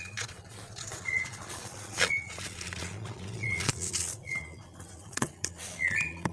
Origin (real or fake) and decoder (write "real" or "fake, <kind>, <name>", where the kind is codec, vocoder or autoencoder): fake, vocoder, Vocos